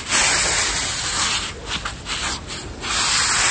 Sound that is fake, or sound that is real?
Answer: real